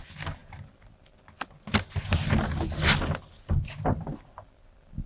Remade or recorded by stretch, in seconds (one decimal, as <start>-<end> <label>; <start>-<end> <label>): 0.0-5.1 recorded